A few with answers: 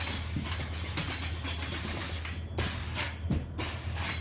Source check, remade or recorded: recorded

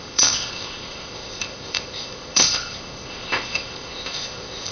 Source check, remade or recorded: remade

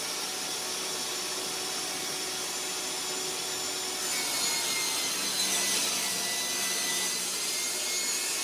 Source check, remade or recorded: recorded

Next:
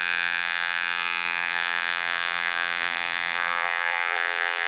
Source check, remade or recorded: remade